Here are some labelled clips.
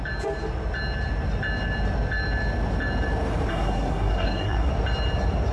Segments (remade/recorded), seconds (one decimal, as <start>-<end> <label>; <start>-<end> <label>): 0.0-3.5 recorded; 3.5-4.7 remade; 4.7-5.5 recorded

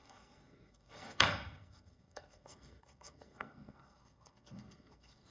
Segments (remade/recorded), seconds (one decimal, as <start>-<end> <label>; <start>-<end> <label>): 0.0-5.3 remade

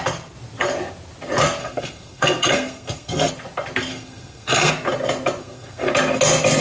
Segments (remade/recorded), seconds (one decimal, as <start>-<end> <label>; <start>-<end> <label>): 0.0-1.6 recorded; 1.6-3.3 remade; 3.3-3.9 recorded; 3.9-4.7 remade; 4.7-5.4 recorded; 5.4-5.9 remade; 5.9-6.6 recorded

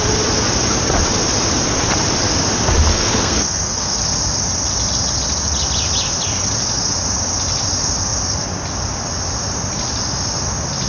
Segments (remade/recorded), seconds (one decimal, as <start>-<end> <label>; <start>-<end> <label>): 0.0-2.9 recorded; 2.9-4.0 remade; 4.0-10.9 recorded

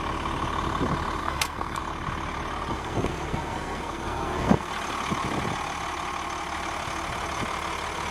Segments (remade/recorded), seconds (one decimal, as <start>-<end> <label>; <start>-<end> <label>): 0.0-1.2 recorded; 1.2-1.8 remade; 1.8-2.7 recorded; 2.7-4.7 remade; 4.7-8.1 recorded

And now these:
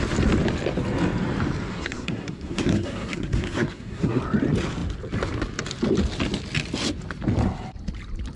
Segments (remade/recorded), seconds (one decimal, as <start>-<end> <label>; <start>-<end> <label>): 0.0-1.7 recorded; 1.7-4.2 remade; 4.2-8.4 recorded